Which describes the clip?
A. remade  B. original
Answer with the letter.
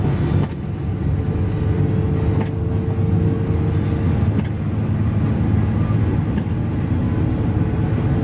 B